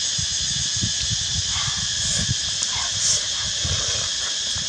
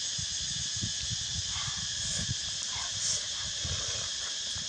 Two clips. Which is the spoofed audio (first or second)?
second